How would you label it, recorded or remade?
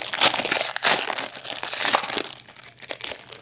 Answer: recorded